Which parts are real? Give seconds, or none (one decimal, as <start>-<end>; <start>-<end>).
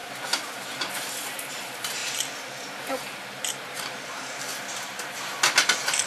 0.0-1.6; 2.0-3.5; 4.5-6.1